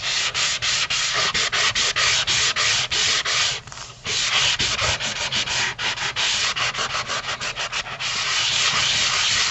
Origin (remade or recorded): recorded